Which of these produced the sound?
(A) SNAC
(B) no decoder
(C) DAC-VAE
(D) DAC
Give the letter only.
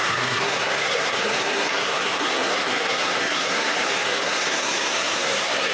A